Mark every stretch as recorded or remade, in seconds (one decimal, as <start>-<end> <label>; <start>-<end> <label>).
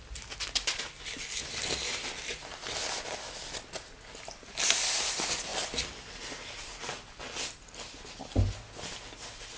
0.0-9.6 recorded